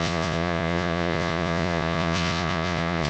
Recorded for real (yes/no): no